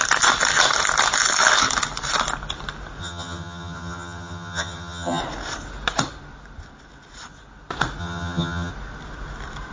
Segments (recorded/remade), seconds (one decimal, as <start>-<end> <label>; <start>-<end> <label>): 0.0-3.0 recorded; 3.0-5.2 remade; 5.2-8.0 recorded; 8.0-8.7 remade; 8.7-9.7 recorded